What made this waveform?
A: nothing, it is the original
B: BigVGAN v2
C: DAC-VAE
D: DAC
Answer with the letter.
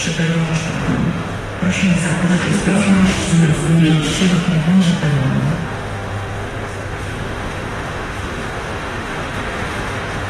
C